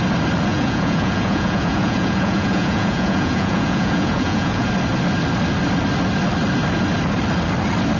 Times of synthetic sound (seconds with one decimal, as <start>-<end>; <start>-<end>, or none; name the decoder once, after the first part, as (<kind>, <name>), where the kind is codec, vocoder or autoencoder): 0.5-4.7 (vocoder, Vocos)